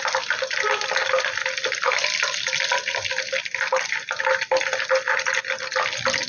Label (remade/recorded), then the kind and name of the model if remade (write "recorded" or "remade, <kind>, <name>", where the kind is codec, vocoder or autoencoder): recorded